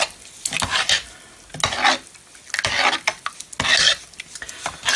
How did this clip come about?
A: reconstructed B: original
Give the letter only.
B